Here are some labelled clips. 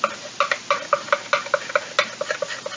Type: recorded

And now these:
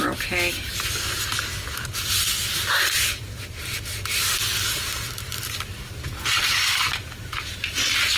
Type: recorded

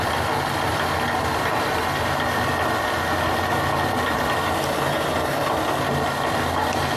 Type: recorded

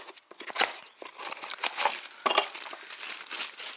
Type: recorded